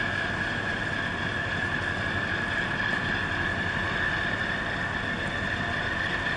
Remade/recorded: recorded